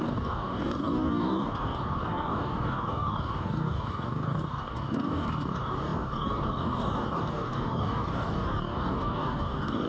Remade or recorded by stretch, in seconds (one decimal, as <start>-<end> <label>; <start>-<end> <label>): 0.0-9.9 remade